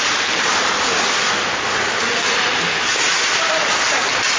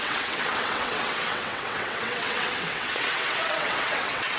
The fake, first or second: second